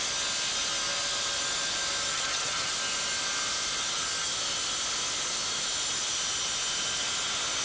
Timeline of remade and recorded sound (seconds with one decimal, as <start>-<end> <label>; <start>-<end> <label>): 0.0-2.1 recorded; 2.1-2.7 remade; 2.7-7.6 recorded